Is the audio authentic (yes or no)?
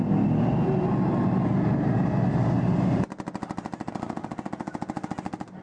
yes